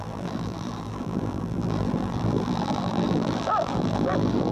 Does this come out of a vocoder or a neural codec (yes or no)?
yes